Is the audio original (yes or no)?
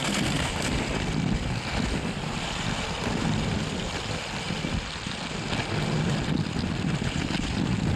yes